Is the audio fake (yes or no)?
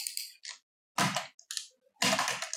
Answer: no